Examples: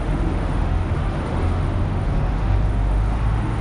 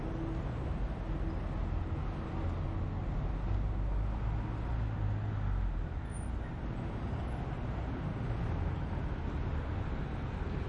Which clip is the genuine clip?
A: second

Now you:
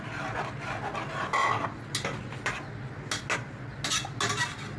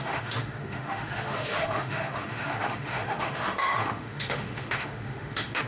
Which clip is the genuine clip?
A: first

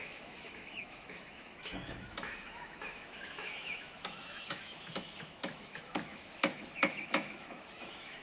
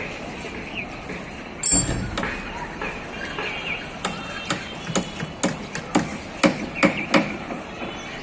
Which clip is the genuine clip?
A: second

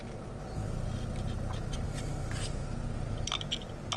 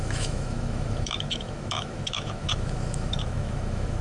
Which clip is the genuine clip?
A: first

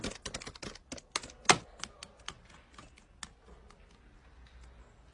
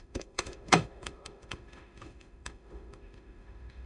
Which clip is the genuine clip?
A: first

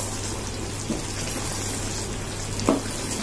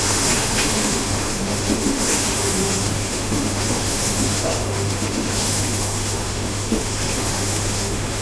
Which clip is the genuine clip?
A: first